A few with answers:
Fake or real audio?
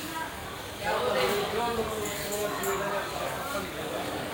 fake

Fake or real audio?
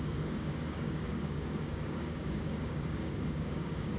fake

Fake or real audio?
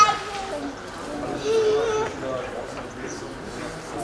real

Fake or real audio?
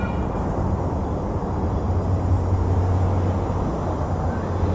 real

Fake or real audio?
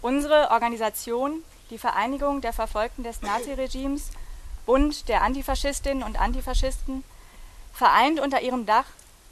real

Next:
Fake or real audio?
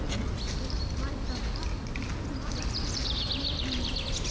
real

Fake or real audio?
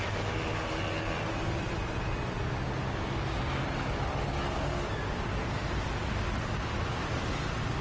real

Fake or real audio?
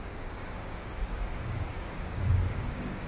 fake